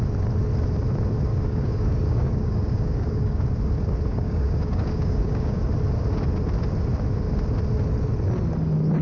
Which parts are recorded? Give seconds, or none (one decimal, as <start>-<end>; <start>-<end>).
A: 0.0-1.3; 3.5-4.1; 5.6-9.0